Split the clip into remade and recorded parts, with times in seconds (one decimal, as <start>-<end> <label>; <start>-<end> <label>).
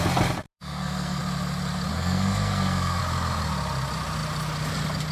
0.0-0.5 recorded; 0.5-1.2 remade; 1.2-1.9 recorded; 1.9-3.0 remade; 3.0-5.1 recorded